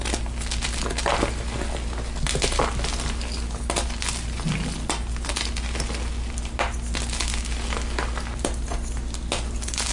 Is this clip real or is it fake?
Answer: real